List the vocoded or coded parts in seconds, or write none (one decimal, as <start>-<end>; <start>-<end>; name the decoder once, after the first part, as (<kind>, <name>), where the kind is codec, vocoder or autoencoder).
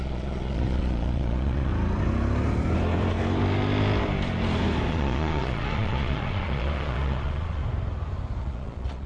0.0-1.7 (vocoder, Vocos); 4.9-7.6; 8.4-9.1